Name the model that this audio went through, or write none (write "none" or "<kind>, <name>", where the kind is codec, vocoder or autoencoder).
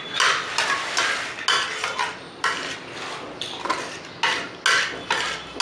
none